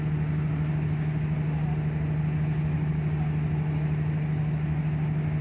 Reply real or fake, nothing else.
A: real